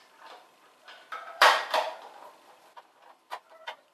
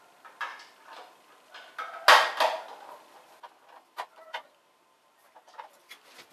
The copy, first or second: first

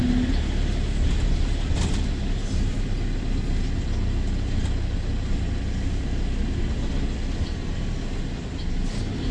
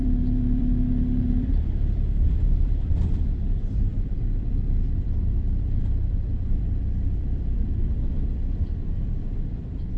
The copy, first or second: second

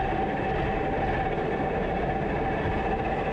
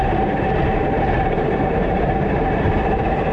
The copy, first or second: second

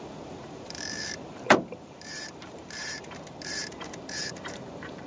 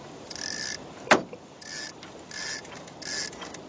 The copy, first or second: first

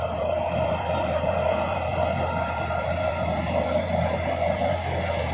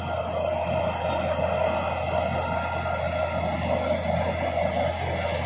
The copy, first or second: first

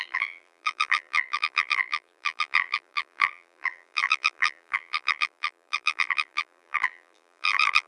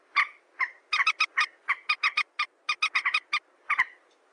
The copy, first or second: first